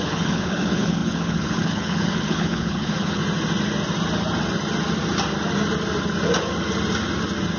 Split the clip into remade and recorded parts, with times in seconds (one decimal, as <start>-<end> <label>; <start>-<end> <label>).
0.0-3.2 remade; 3.2-7.6 recorded